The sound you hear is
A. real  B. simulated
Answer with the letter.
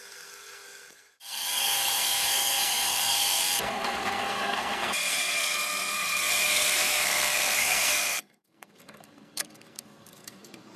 B